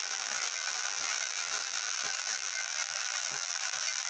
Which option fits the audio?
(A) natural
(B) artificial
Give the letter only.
B